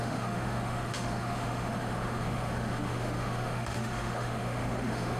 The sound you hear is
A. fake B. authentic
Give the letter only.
A